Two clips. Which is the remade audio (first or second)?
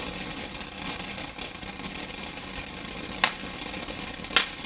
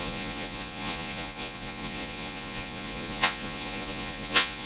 second